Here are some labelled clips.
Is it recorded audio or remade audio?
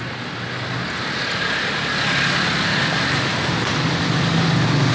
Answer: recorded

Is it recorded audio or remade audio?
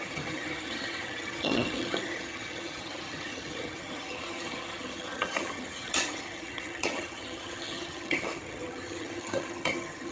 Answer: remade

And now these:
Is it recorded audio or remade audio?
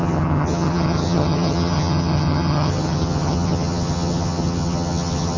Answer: remade